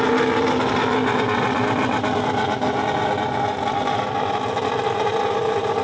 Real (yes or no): yes